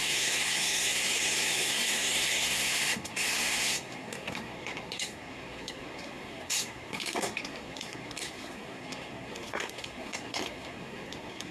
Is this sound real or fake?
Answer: fake